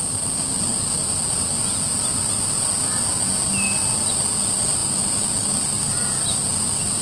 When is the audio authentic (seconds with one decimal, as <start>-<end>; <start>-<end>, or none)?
0.0-7.0